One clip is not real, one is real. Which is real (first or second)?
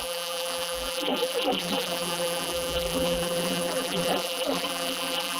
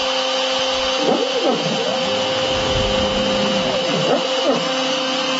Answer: second